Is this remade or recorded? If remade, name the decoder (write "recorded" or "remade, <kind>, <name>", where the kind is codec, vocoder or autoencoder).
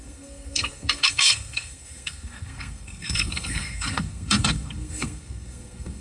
remade, codec, SNAC